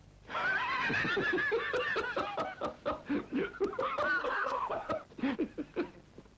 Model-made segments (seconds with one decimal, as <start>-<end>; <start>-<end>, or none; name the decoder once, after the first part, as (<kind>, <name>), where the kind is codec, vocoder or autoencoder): 4.2-4.9 (codec, SNAC)